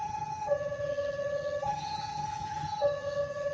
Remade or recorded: remade